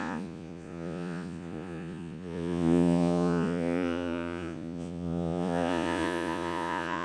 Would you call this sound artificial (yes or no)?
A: yes